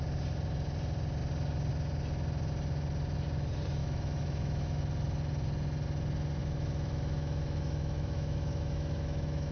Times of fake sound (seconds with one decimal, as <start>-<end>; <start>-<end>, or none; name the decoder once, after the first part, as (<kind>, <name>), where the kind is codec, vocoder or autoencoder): 3.8-4.8 (autoencoder, DAC-VAE); 6.4-9.5